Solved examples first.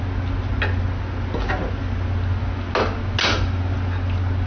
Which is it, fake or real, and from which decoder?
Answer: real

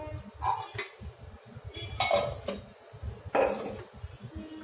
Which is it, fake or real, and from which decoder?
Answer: real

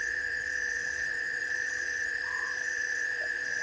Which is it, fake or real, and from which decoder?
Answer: fake, vocoder, Vocos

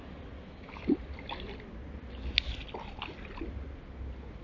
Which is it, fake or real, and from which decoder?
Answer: real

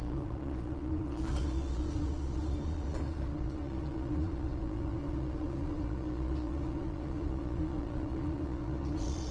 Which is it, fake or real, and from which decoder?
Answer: fake, vocoder, Vocos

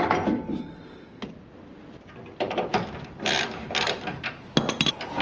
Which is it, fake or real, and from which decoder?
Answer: real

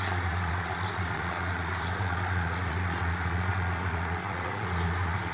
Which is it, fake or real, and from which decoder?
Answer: fake, vocoder, Vocos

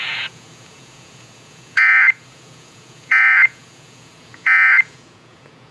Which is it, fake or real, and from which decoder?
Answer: fake, vocoder, Vocos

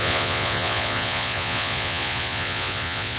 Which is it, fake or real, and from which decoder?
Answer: fake, vocoder, Vocos